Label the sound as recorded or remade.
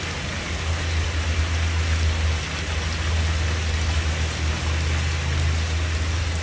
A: recorded